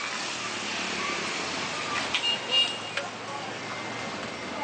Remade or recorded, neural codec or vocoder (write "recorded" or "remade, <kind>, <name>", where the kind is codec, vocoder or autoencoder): recorded